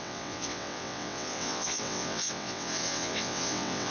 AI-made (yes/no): yes